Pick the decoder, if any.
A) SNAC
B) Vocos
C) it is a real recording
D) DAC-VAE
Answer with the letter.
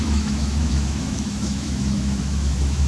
D